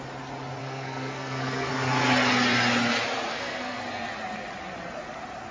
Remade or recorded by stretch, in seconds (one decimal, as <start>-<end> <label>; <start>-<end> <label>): 0.0-0.6 recorded; 0.6-1.7 remade; 1.7-3.3 recorded; 3.3-3.8 remade; 3.8-5.5 recorded